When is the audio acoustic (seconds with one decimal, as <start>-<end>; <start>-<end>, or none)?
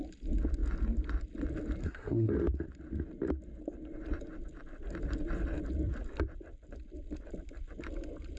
0.0-1.8; 2.3-8.4